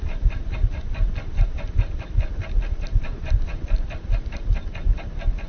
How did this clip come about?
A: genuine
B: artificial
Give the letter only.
A